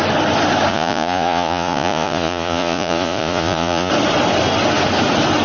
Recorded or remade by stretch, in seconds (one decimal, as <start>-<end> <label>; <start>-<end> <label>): 0.0-0.7 recorded; 0.7-3.9 remade; 3.9-5.4 recorded